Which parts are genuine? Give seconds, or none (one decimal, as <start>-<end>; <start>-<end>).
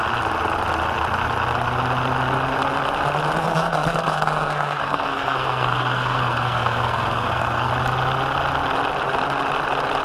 0.0-3.4; 7.7-10.0